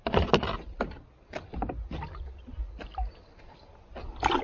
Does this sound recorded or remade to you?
recorded